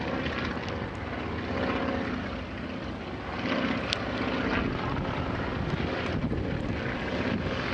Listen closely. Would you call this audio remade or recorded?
recorded